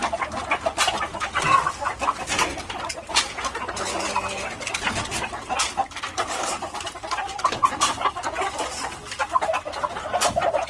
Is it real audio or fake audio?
real